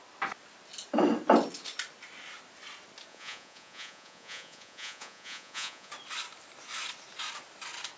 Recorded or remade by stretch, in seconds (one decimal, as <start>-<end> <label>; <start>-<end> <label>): 0.0-3.1 recorded; 3.1-5.9 remade; 5.9-8.0 recorded